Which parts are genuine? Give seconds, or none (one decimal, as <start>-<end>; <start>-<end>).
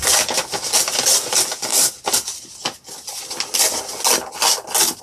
0.0-5.0